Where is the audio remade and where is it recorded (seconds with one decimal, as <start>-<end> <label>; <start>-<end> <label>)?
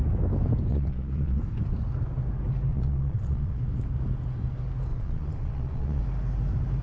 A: 0.0-0.7 recorded; 0.7-1.4 remade; 1.4-2.7 recorded; 2.7-3.6 remade; 3.6-4.9 recorded; 4.9-6.0 remade; 6.0-6.8 recorded